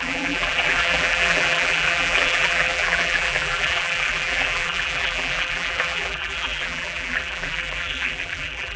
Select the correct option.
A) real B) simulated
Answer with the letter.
B